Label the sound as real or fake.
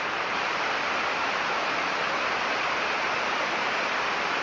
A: fake